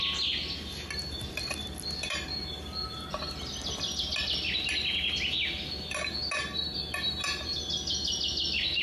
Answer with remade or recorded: recorded